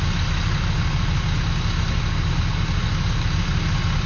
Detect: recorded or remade recorded